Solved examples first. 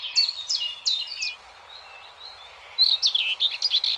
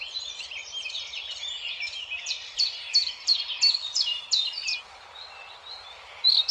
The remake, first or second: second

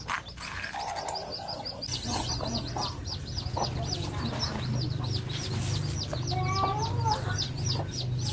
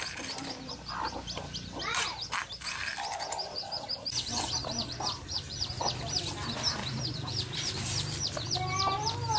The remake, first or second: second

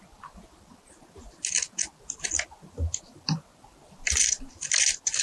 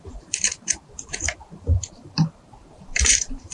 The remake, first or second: second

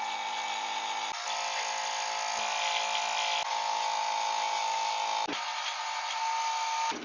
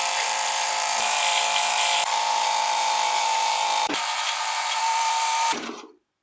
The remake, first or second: second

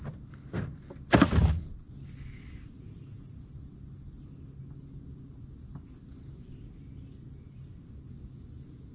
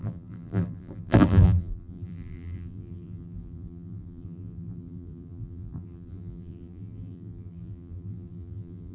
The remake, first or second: second